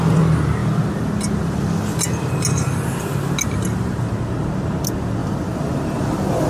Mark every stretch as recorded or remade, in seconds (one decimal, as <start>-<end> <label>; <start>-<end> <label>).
0.0-5.2 recorded; 5.2-6.5 remade